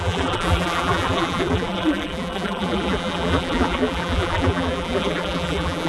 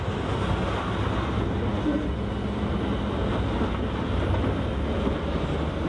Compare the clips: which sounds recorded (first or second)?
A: second